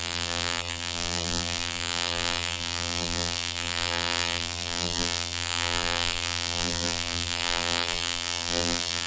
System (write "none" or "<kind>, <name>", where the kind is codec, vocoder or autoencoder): vocoder, BigVGAN v2